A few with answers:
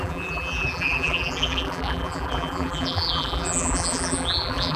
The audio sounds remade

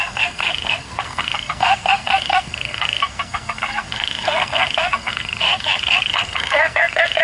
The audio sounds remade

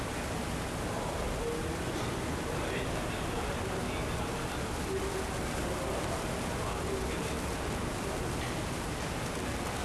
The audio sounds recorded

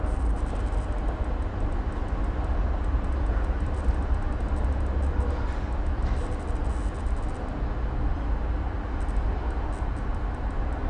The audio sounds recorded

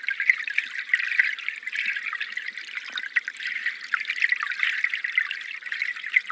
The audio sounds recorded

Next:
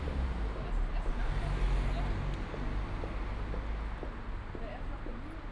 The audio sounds recorded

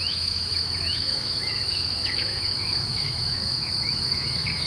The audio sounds remade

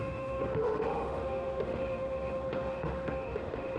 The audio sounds remade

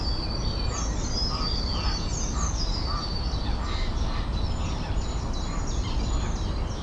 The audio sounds recorded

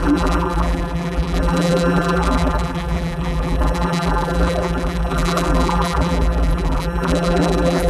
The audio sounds remade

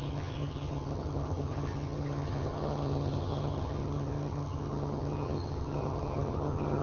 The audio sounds remade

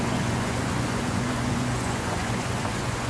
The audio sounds remade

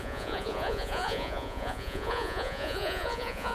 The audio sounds remade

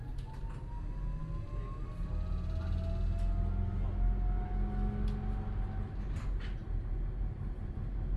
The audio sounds recorded